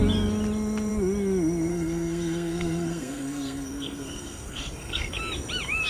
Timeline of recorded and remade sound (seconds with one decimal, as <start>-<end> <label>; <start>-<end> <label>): 0.0-1.7 recorded; 1.7-5.2 remade; 5.2-5.9 recorded